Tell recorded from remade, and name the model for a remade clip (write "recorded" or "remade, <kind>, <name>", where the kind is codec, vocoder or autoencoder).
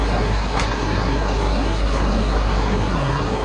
remade, codec, SNAC